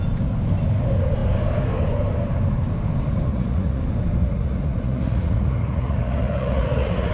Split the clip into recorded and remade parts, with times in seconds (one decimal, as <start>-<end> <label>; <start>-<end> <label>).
0.0-3.3 recorded; 3.3-3.8 remade; 3.8-4.2 recorded; 4.2-7.1 remade